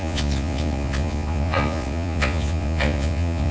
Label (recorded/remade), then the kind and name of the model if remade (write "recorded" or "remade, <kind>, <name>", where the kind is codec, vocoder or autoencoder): remade, vocoder, Vocos